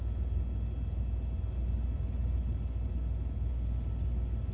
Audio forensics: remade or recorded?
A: recorded